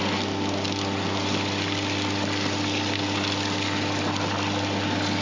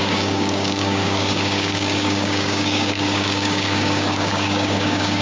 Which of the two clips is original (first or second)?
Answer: first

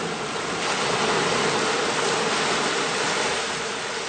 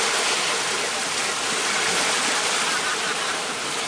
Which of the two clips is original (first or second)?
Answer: first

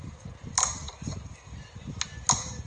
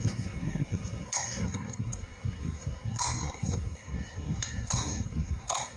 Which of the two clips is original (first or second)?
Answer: first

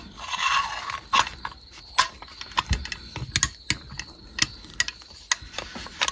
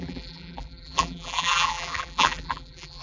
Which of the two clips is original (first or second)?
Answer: first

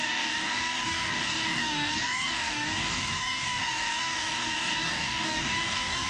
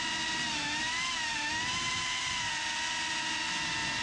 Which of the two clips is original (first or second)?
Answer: second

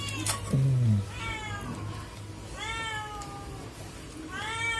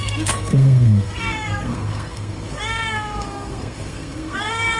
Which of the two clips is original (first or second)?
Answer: first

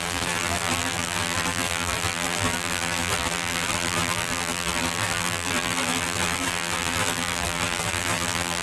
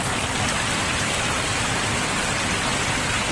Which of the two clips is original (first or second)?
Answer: second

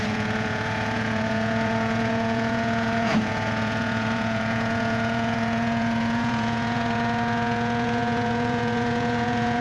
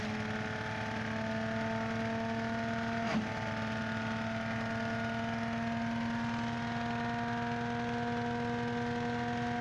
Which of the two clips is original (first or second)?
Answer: second